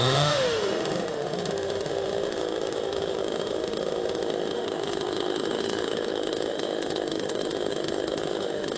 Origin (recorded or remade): remade